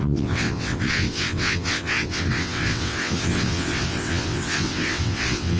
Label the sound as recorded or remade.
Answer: remade